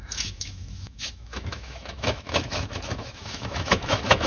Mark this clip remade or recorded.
remade